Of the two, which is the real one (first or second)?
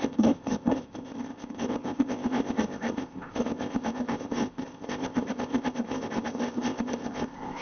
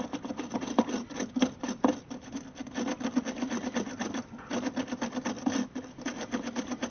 second